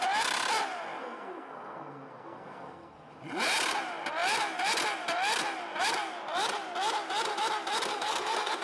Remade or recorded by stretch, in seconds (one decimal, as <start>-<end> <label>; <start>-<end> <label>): 0.0-1.0 recorded; 1.0-3.1 remade; 3.1-7.9 recorded; 7.9-8.6 remade